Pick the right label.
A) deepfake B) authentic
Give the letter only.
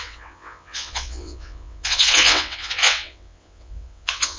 A